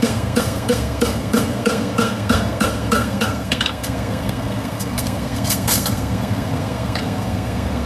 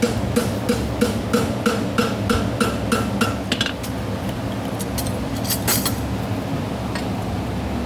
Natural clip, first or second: second